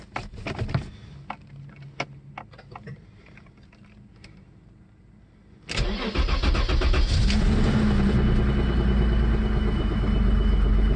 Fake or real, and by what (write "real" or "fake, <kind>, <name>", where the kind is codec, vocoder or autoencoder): real